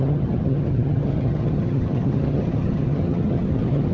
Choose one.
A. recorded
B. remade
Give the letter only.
B